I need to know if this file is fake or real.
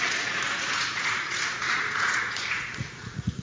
fake